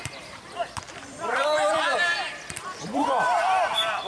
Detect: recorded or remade remade